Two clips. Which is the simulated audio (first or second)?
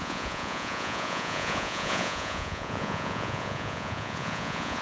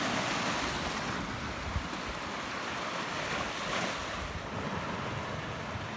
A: first